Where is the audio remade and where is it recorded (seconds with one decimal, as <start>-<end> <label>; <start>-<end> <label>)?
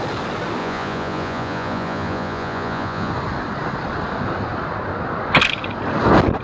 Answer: 0.0-0.6 recorded; 0.6-3.1 remade; 3.1-6.4 recorded